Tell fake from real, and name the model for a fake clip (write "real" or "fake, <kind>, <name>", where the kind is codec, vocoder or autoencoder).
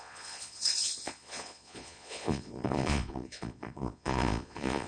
fake, vocoder, Vocos